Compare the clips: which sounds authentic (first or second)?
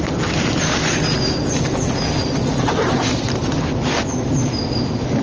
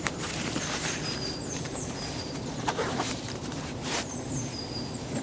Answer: first